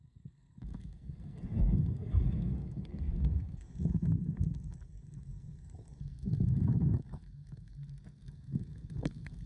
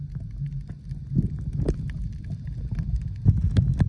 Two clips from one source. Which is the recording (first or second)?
second